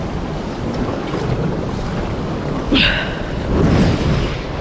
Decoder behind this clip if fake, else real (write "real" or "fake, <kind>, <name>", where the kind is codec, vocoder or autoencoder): real